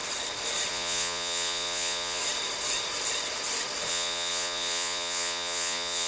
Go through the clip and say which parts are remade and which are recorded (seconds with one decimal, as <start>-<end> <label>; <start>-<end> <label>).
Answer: 0.0-0.7 recorded; 0.7-2.2 remade; 2.2-3.9 recorded; 3.9-6.1 remade